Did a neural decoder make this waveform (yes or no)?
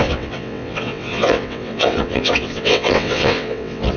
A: yes